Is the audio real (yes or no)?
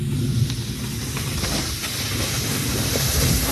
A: yes